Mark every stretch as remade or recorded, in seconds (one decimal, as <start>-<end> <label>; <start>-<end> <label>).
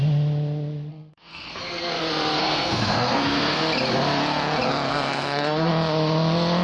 0.0-0.9 recorded; 0.9-2.0 remade; 2.0-2.4 recorded; 2.4-3.6 remade; 3.6-4.9 recorded; 4.9-5.7 remade; 5.7-6.6 recorded